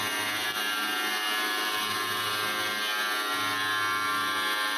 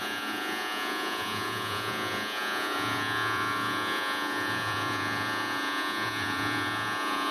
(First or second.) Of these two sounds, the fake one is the second